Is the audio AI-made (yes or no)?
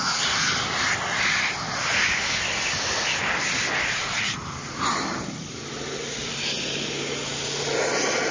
no